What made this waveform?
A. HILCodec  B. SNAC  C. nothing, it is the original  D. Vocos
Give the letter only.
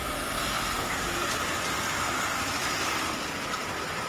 C